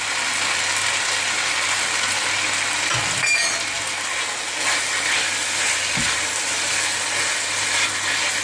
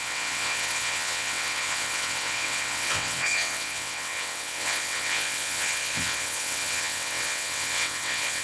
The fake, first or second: second